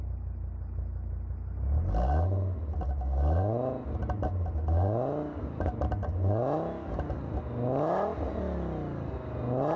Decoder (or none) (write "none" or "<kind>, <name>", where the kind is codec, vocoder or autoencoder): none